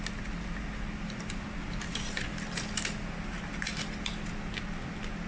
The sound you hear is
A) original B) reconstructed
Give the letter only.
A